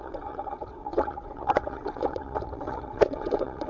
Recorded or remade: remade